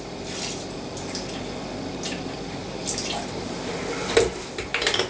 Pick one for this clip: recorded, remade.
recorded